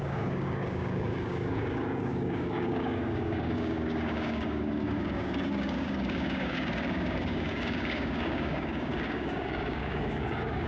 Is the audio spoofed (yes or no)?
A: yes